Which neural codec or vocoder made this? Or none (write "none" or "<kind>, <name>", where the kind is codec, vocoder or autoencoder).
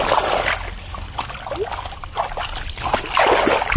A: none